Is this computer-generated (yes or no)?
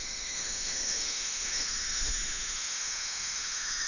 yes